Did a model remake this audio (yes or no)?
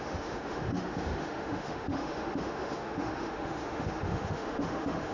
yes